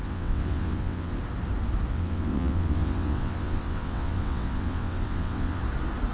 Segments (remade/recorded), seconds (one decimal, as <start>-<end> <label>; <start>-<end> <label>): 0.0-1.1 remade; 1.1-1.9 recorded; 1.9-5.6 remade; 5.6-6.1 recorded